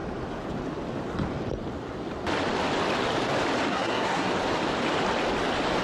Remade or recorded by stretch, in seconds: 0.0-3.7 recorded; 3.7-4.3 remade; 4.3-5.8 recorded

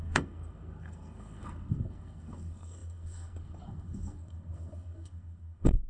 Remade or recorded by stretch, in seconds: 0.0-5.9 remade

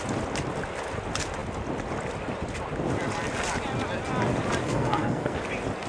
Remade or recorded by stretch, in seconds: 0.0-4.6 recorded; 4.6-5.4 remade; 5.4-5.9 recorded

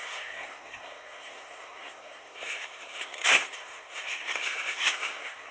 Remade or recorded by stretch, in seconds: 0.0-5.5 remade

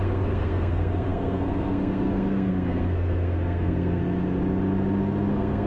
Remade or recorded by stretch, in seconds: 0.0-4.0 remade; 4.0-5.3 recorded; 5.3-5.7 remade

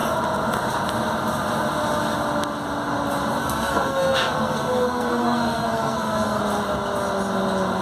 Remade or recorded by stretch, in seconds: 0.0-3.4 recorded; 3.4-6.4 remade; 6.4-7.8 recorded

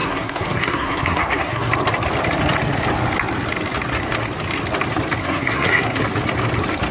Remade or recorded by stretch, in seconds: 0.0-1.7 remade; 1.7-5.2 recorded; 5.2-6.0 remade; 6.0-6.9 recorded